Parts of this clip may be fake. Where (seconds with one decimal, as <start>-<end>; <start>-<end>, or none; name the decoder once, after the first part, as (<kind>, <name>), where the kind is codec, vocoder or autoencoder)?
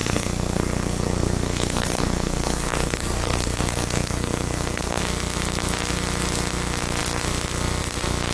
0.0-5.0 (codec, SNAC)